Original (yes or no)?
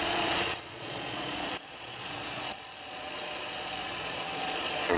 no